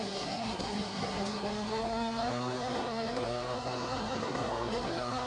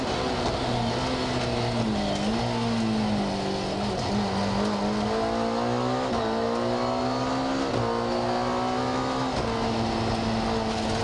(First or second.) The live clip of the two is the second